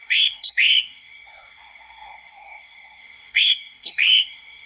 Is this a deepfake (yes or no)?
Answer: yes